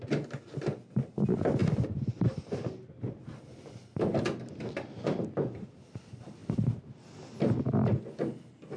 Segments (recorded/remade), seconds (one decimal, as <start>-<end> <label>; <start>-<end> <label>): 0.0-8.8 recorded